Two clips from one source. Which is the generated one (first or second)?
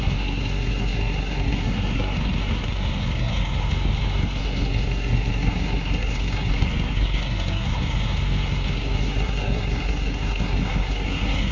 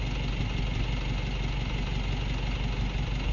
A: first